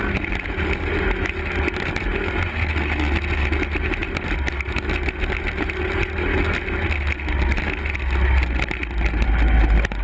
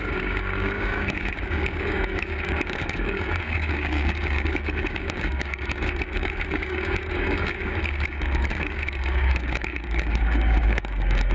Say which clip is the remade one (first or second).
second